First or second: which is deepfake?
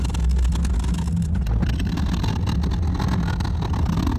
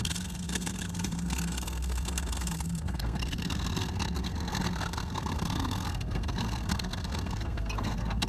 second